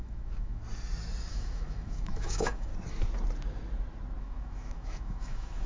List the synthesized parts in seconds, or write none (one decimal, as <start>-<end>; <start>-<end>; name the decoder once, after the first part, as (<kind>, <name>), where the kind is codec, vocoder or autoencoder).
0.0-0.6 (autoencoder, DAC-VAE); 1.3-2.7; 4.2-5.7